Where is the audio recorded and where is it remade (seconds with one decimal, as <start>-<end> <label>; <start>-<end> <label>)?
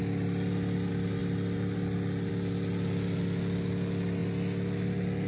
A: 0.0-5.3 recorded